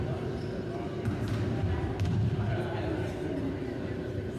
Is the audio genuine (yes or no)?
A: yes